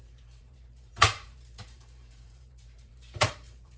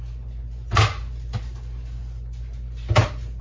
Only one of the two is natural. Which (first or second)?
second